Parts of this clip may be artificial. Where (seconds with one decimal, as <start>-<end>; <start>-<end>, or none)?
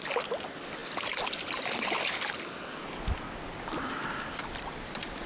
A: none